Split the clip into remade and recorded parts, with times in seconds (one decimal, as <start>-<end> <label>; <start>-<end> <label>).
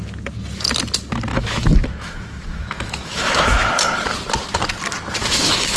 0.0-1.3 recorded; 1.3-3.7 remade; 3.7-5.2 recorded; 5.2-5.8 remade